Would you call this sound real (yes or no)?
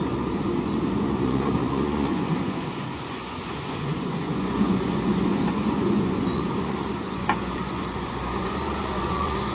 no